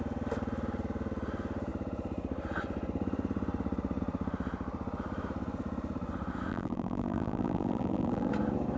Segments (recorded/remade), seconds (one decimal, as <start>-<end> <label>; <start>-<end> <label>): 0.0-6.5 recorded; 6.5-8.3 remade; 8.3-8.8 recorded